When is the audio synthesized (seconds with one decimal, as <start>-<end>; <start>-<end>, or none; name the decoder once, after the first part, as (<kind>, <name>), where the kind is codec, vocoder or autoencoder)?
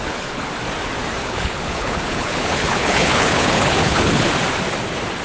0.0-0.5 (codec, HILCodec); 1.2-4.3